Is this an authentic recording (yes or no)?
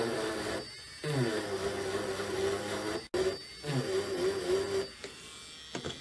yes